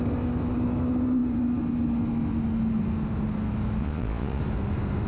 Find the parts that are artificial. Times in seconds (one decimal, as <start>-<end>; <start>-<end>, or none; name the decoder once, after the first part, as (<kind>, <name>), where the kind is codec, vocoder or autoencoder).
3.8-4.4 (vocoder, Vocos)